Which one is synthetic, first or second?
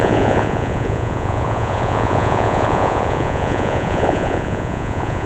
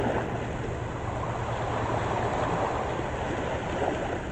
first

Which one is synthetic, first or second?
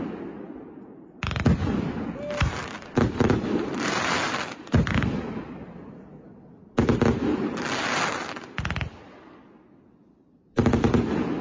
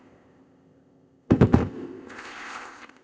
second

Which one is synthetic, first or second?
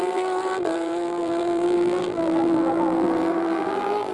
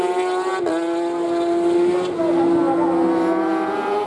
first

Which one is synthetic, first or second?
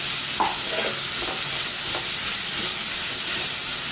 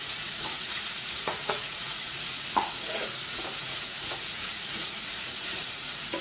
second